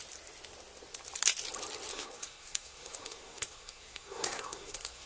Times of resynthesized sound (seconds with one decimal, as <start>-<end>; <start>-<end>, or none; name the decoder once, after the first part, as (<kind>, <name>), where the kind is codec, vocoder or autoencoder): 1.9-5.1 (codec, SNAC)